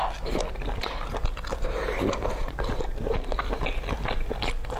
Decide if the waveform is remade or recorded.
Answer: recorded